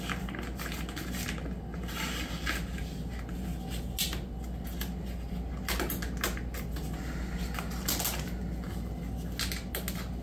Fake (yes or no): no